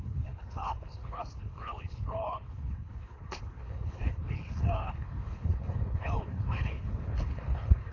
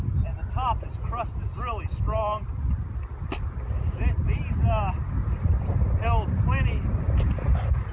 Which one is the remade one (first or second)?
first